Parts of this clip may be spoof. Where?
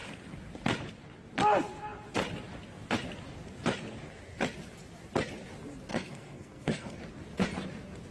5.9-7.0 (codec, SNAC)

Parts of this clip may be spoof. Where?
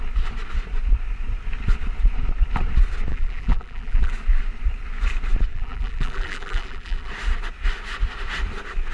3.1-4.1 (vocoder, BigVGAN v2); 5.5-7.1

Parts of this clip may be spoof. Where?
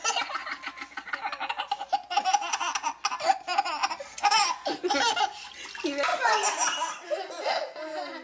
none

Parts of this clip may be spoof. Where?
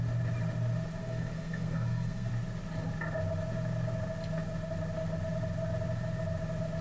1.0-2.3 (codec, SNAC)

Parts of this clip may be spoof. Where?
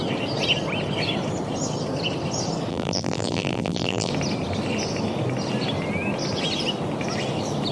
2.7-4.1 (vocoder, BigVGAN v2)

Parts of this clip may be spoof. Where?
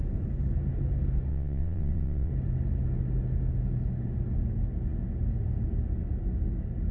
1.3-2.3 (vocoder, WaveNeXt)